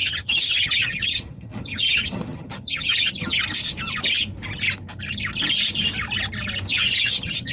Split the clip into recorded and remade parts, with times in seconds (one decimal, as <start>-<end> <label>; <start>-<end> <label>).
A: 0.0-3.4 remade; 3.4-6.7 recorded; 6.7-7.5 remade